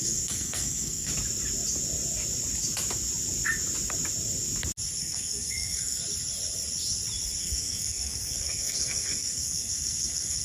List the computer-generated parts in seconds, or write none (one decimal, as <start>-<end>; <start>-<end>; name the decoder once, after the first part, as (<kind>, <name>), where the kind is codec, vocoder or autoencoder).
0.0-1.1 (codec, SNAC); 5.0-6.0; 7.4-10.4